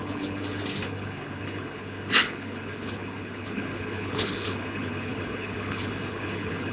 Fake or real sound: fake